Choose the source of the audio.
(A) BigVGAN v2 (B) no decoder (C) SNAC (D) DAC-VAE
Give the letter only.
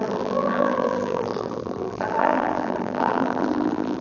A